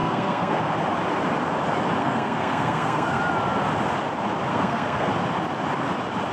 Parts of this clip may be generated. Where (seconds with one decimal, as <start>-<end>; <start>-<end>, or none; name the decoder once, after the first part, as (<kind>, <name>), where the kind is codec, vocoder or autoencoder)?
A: 0.0-0.6 (codec, SNAC); 2.0-3.2; 4.5-5.1